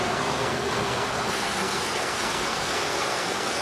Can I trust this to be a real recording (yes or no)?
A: no